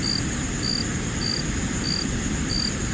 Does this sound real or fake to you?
real